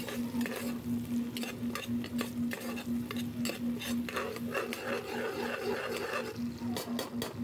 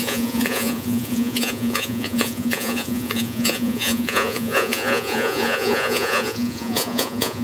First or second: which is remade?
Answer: second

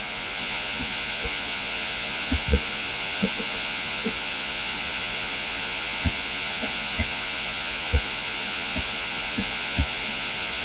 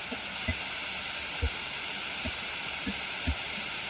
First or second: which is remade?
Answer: first